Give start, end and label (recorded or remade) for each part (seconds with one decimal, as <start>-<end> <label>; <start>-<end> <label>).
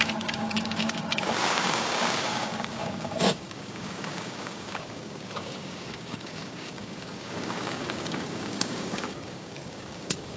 0.0-10.4 remade